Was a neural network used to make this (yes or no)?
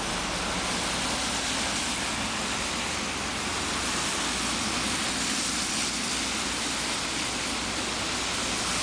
no